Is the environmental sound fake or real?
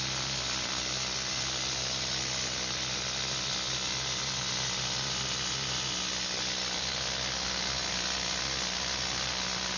real